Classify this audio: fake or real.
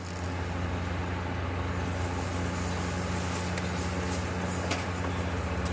real